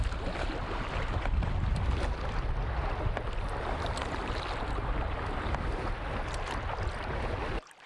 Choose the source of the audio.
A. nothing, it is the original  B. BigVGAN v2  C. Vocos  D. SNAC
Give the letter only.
A